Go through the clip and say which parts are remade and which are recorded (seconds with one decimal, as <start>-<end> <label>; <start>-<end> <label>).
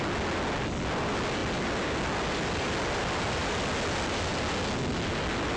0.0-5.6 recorded